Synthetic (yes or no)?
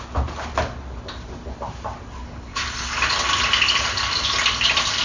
no